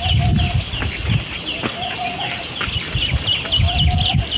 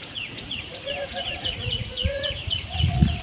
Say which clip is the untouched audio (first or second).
first